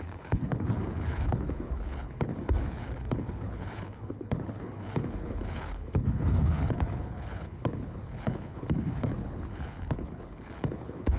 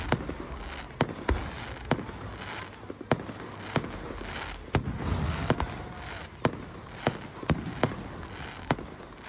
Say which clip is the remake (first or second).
first